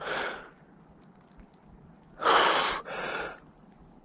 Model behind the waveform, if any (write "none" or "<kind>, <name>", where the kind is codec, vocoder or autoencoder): none